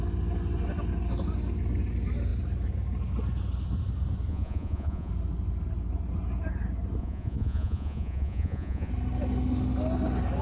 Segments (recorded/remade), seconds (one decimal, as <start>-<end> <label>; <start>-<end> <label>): 0.0-4.3 recorded; 4.3-5.1 remade; 5.1-7.0 recorded; 7.0-8.9 remade; 8.9-10.4 recorded